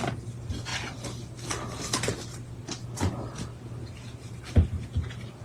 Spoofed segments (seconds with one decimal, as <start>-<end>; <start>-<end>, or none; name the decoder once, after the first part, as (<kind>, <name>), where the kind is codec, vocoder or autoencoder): none